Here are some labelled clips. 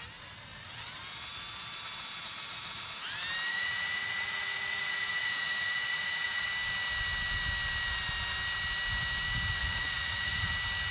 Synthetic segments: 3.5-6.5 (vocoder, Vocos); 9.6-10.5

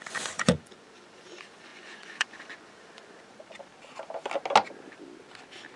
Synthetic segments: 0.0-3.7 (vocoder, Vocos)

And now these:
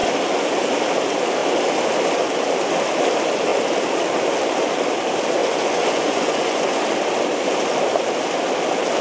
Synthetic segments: 5.4-6.8 (vocoder, Vocos)

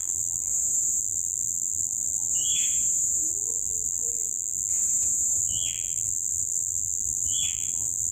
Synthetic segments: 0.0-0.5 (vocoder, BigVGAN v2); 1.0-2.3; 3.3-4.7; 5.4-8.1

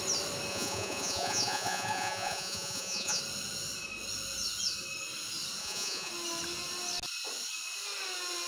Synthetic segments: 0.5-3.2 (vocoder, Vocos); 5.6-6.1

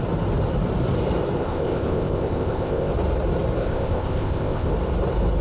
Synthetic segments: 1.4-2.9 (codec, ZipCodec); 3.6-4.7